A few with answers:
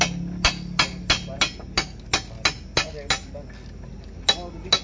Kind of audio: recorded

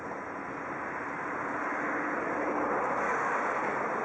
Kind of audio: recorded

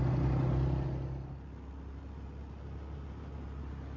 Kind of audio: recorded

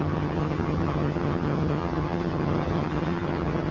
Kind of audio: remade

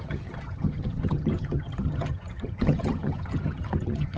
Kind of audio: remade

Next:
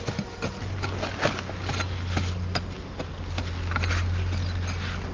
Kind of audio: recorded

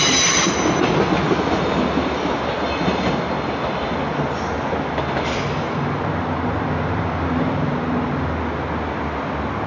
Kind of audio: recorded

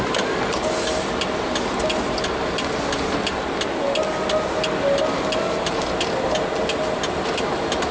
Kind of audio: recorded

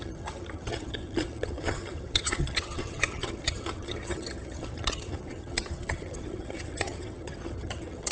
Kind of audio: remade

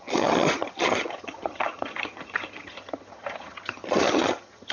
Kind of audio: remade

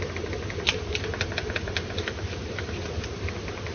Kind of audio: recorded